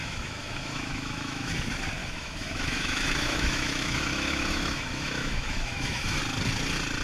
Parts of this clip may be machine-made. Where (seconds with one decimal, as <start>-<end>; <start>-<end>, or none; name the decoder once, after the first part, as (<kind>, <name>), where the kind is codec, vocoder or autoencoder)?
0.0-1.5 (autoencoder, DAC-VAE); 2.0-6.2